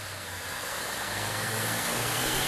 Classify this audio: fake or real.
fake